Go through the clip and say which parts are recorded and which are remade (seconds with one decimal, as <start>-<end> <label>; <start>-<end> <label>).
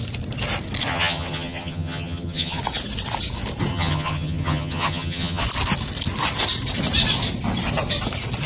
0.0-0.9 recorded; 0.9-2.6 remade; 2.6-3.7 recorded; 3.7-5.4 remade; 5.4-8.5 recorded